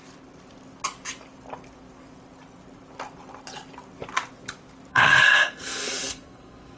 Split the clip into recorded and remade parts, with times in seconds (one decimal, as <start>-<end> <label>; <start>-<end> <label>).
0.0-4.9 recorded; 4.9-6.8 remade